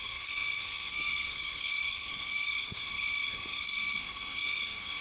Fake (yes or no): yes